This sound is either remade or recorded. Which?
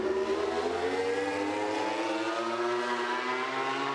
recorded